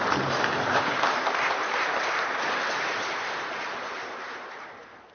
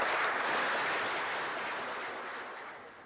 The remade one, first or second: first